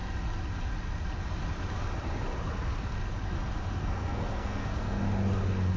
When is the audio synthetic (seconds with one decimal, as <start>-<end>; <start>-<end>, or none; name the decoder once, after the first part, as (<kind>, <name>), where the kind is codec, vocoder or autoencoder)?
3.8-5.0 (codec, SNAC)